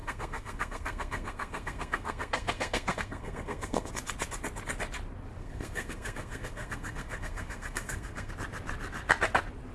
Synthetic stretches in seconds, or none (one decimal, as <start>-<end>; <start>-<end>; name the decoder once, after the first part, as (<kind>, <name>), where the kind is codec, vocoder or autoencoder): 0.0-3.9 (codec, SNAC); 5.4-8.3